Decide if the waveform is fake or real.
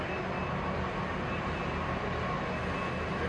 real